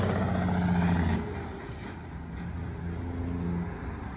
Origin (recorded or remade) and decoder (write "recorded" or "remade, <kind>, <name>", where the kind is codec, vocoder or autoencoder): recorded